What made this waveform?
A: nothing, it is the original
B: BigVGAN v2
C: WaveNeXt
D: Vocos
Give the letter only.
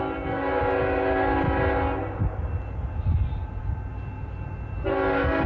A